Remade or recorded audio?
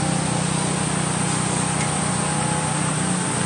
recorded